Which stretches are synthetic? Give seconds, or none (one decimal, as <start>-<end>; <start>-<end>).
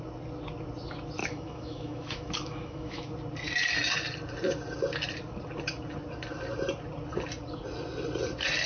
1.2-3.1